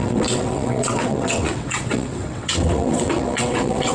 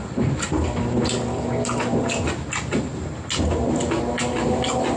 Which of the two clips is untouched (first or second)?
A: second